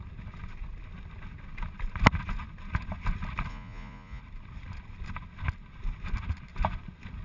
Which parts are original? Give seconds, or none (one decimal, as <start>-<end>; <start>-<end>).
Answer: 0.0-3.5; 4.2-7.2